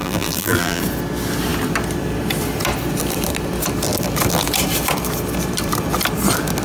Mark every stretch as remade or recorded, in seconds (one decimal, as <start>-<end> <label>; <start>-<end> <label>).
0.0-0.8 remade; 0.8-6.6 recorded